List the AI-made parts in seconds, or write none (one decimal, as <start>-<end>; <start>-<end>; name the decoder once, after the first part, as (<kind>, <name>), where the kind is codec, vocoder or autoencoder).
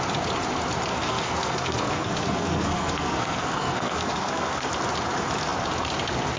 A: 0.9-4.7 (codec, SNAC)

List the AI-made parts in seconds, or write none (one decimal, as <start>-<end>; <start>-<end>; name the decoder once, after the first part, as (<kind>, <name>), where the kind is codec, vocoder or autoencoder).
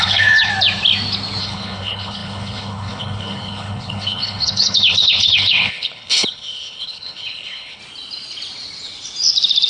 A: 0.0-0.5 (codec, HILCodec); 1.4-7.8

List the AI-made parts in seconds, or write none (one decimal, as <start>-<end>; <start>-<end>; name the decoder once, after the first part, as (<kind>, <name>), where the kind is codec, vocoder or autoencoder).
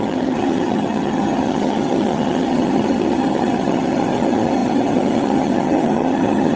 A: 0.0-6.6 (vocoder, HiFi-GAN)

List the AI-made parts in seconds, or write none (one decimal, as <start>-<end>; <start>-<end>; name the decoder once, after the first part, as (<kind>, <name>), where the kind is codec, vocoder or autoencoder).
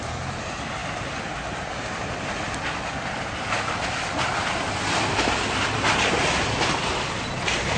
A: none